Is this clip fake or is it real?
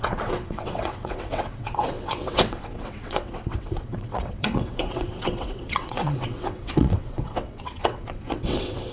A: fake